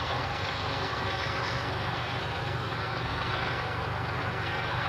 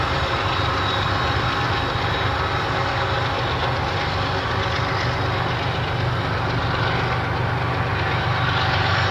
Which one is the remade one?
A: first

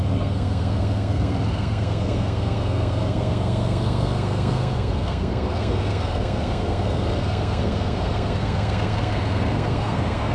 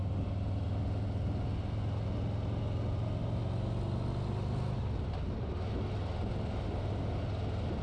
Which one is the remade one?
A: first